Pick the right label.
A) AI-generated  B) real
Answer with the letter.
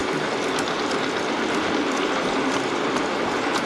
B